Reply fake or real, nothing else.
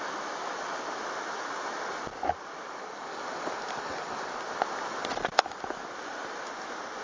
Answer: real